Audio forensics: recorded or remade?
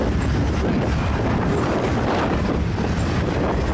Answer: recorded